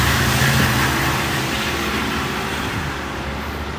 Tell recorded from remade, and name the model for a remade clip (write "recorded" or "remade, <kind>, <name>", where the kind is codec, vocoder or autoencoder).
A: remade, vocoder, BigVGAN v2